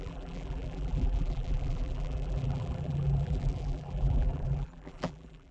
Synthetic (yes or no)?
yes